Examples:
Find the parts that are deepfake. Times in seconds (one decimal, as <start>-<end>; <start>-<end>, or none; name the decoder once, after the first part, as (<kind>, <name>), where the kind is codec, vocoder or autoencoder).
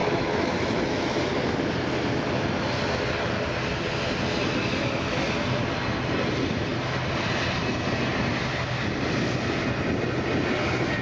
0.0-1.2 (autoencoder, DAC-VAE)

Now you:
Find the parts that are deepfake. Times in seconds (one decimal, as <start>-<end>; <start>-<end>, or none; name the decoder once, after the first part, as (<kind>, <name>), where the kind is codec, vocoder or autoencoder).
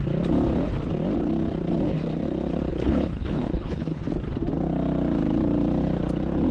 2.7-4.0 (codec, HILCodec)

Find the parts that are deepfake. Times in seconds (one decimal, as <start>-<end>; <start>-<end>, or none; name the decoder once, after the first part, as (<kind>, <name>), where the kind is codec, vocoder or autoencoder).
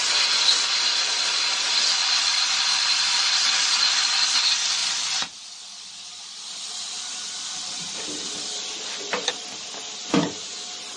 2.0-3.9 (vocoder, BigVGAN v2); 4.8-9.3